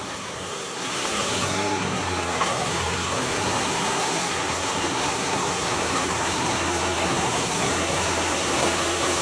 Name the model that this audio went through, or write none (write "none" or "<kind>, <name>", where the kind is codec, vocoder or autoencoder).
codec, SNAC